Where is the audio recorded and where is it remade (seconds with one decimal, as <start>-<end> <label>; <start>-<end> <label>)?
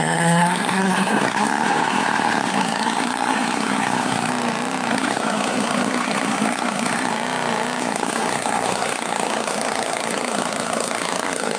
0.0-4.3 remade; 4.3-4.9 recorded; 4.9-7.1 remade; 7.1-7.8 recorded; 7.8-11.6 remade